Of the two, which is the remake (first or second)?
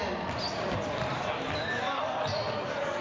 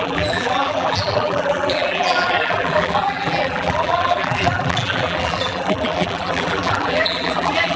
second